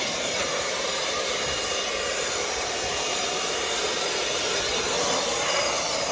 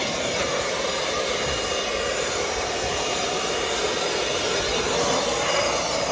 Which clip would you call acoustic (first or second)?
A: second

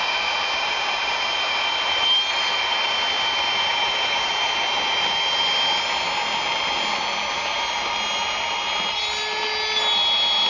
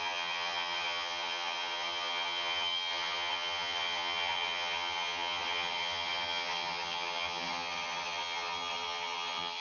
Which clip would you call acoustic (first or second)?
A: first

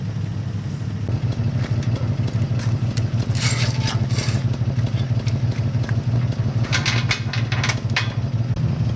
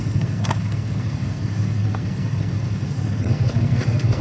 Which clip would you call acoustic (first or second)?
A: first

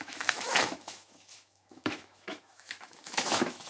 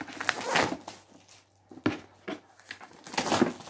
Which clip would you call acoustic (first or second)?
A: second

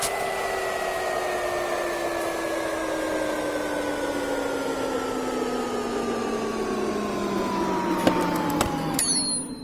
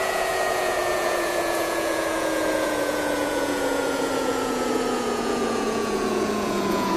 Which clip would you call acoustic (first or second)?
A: first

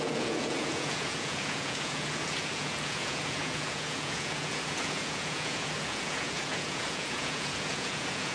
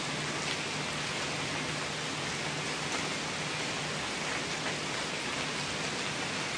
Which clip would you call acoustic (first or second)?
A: second